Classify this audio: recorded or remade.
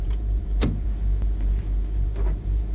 remade